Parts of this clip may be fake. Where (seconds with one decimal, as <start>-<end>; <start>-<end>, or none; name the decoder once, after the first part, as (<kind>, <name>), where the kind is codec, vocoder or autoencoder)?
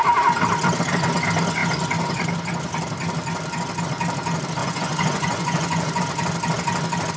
4.6-6.0 (vocoder, Vocos)